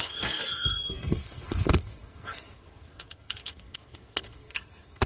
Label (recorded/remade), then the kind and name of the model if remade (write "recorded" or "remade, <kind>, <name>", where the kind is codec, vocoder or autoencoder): remade, codec, SNAC